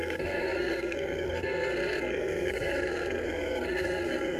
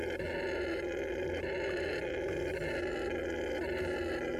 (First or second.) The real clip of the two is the second